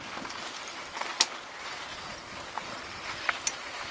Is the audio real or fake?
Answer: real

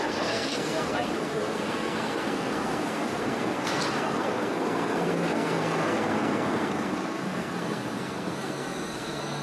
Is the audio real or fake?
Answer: fake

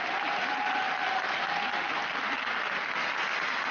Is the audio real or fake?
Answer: real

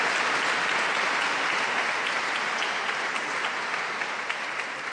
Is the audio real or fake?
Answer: real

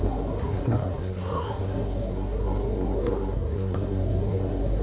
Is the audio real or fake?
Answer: fake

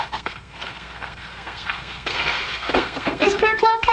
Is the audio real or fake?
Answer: fake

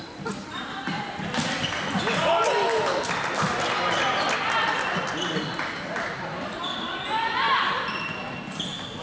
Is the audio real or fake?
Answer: real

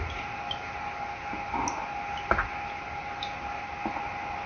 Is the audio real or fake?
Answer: real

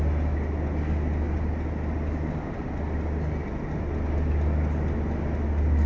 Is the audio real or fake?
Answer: real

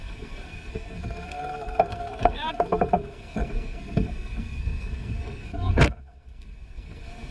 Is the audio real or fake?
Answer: fake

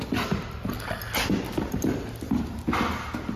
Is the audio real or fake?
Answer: real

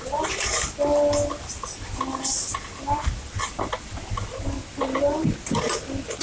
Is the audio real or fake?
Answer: real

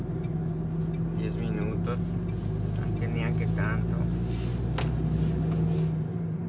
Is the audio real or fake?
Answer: real